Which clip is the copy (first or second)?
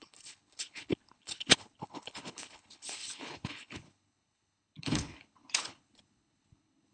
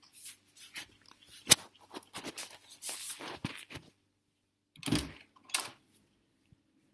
first